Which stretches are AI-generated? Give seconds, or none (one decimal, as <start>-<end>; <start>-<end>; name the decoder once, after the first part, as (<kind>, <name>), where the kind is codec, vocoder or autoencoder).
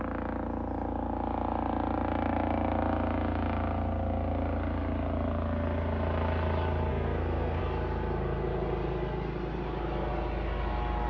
6.9-7.6 (codec, SNAC)